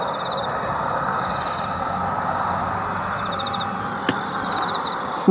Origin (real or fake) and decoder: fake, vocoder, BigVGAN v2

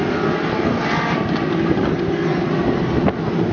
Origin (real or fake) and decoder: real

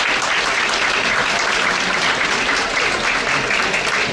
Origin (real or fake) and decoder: real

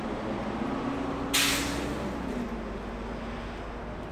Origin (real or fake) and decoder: real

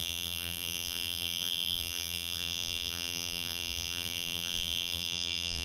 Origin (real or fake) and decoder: fake, vocoder, BigVGAN v2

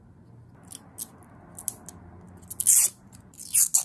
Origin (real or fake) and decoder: real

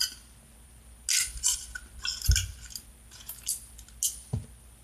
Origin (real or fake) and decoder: real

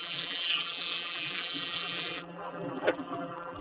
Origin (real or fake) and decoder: fake, vocoder, BigVGAN v2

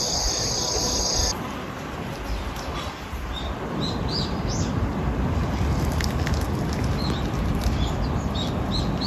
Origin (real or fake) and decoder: real